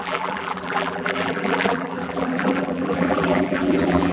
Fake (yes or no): yes